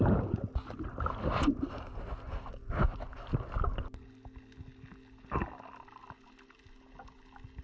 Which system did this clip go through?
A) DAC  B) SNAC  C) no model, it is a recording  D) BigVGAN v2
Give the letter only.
C